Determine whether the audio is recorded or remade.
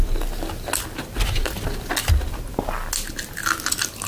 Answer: recorded